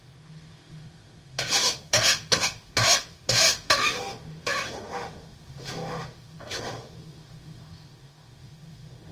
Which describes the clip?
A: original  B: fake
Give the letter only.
B